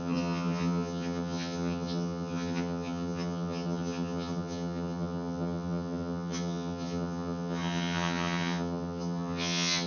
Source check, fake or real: fake